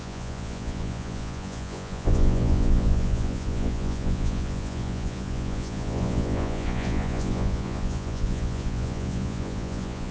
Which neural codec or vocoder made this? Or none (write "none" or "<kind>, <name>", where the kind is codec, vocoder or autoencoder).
vocoder, Vocos